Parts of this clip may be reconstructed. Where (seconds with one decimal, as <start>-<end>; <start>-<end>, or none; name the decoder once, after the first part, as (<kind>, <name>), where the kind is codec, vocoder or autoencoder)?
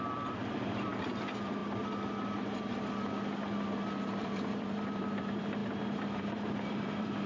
0.0-1.6 (vocoder, BigVGAN v2); 4.2-5.6; 6.2-7.3